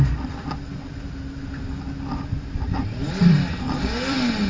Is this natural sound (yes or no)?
yes